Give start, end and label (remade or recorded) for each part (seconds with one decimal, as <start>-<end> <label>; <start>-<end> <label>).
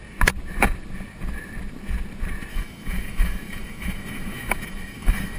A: 0.0-2.5 recorded; 2.5-5.4 remade